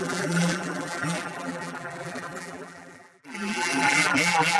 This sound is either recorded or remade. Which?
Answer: remade